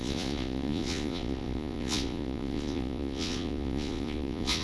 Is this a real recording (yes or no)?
no